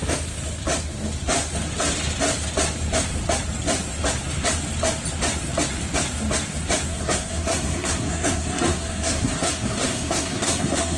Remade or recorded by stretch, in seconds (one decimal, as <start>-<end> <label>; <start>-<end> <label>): 0.0-6.9 recorded; 6.9-11.0 remade